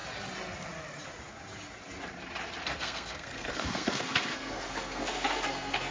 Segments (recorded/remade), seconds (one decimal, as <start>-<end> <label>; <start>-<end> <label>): 0.0-2.6 recorded; 2.6-5.9 remade